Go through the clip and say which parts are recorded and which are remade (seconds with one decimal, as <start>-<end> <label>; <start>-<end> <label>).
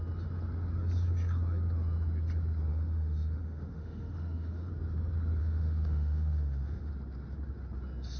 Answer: 0.0-2.7 recorded; 2.7-4.7 remade; 4.7-5.4 recorded; 5.4-6.9 remade; 6.9-8.2 recorded